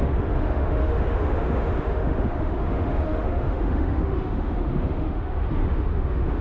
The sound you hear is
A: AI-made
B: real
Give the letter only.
A